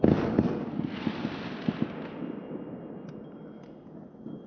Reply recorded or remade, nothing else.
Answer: recorded